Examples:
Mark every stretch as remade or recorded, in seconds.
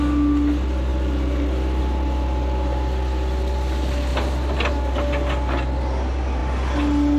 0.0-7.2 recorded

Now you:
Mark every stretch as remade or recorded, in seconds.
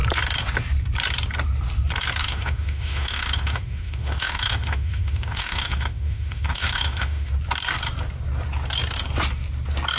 0.0-2.2 recorded; 2.2-7.3 remade; 7.3-10.0 recorded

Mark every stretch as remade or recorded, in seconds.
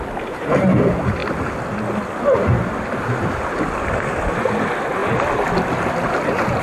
0.0-6.6 recorded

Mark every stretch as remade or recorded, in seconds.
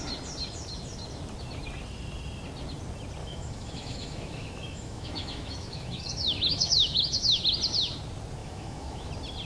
0.0-3.2 recorded; 3.2-7.4 remade; 7.4-8.4 recorded; 8.4-9.1 remade; 9.1-9.5 recorded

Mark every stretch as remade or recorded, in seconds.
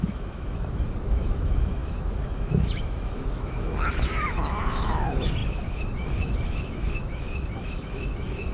0.0-8.5 remade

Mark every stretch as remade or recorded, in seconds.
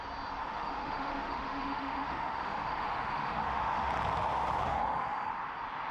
0.0-0.4 recorded; 0.4-3.9 remade; 3.9-4.7 recorded; 4.7-5.3 remade; 5.3-5.9 recorded